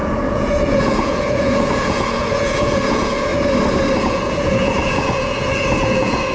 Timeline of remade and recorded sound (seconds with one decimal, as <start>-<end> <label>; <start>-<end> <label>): 0.0-3.3 remade; 3.3-4.0 recorded; 4.0-6.3 remade

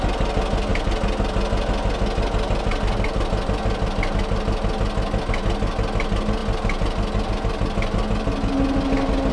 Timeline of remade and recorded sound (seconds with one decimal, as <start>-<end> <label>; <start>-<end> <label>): 0.0-9.3 recorded

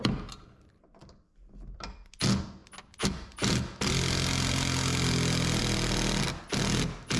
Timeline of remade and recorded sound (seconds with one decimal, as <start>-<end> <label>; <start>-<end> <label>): 0.0-7.2 recorded

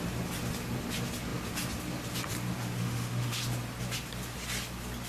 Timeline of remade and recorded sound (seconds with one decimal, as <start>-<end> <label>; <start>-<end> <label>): 0.0-2.8 recorded; 2.8-3.4 remade; 3.4-5.1 recorded

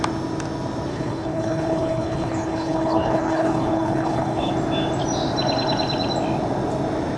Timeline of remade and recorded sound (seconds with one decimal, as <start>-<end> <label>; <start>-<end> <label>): 0.0-0.9 recorded; 0.9-4.5 remade; 4.5-7.2 recorded

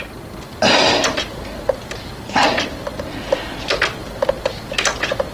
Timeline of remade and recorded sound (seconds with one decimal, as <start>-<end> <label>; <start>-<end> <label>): 0.0-5.3 recorded